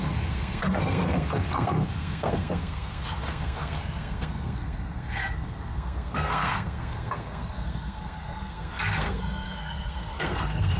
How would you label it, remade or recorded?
remade